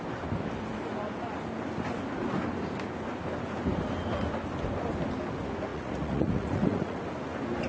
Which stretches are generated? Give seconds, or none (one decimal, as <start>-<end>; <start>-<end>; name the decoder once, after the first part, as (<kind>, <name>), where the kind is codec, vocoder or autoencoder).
5.7-7.0 (vocoder, Vocos)